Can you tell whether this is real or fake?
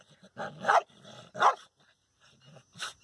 real